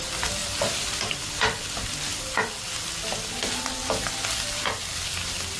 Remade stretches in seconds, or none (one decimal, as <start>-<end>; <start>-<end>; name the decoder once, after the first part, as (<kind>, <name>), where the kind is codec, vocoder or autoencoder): 0.4-1.3 (vocoder, BigVGAN v2)